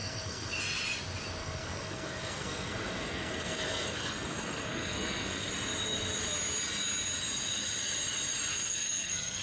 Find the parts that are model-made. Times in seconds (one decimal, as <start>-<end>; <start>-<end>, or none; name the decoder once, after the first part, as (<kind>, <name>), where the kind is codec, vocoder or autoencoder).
0.0-0.5 (codec, SNAC); 1.4-5.5; 8.5-9.4

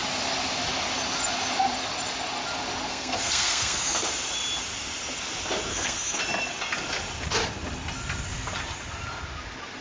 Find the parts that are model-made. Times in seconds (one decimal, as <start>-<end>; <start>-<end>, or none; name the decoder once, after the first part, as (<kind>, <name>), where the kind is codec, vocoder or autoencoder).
2.9-4.1 (codec, SNAC); 5.7-6.2

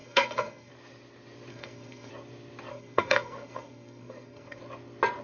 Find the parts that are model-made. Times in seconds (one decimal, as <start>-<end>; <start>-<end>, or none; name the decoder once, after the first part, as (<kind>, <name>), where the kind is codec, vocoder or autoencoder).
0.0-0.7 (codec, SNAC); 1.5-2.1; 2.7-4.6

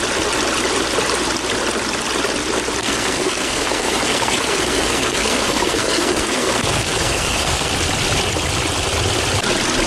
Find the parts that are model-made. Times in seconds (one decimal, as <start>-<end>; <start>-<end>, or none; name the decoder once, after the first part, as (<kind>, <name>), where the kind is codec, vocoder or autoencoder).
2.8-7.7 (codec, SNAC)